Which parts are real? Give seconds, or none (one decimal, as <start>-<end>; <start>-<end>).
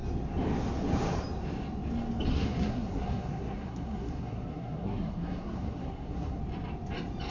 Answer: 0.0-2.3; 6.4-7.3